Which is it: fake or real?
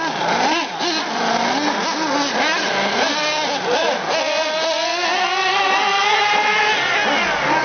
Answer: real